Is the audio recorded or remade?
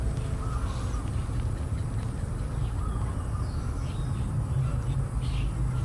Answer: recorded